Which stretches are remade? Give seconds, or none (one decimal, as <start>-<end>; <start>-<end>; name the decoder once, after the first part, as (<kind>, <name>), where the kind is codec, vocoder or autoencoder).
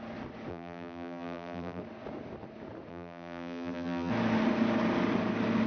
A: 0.5-1.8 (vocoder, BigVGAN v2); 2.9-4.1